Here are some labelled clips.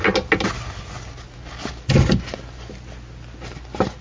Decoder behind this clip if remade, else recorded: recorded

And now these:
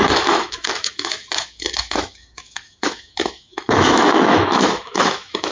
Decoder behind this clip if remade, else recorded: remade, autoencoder, DAC-VAE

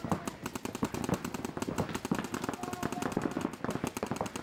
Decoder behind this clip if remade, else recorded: recorded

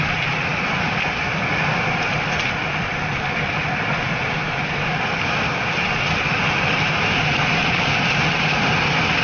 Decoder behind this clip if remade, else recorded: recorded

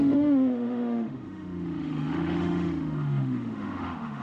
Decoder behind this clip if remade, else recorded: remade, autoencoder, DAC-VAE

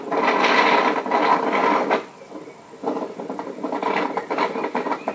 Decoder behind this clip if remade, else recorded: recorded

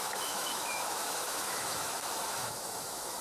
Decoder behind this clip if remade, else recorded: remade, autoencoder, DAC-VAE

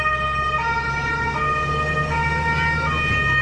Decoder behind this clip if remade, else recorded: recorded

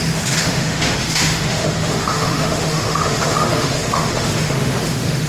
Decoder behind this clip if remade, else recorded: remade, autoencoder, DAC-VAE